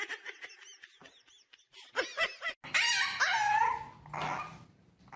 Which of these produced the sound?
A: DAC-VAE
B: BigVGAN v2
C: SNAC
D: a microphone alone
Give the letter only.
D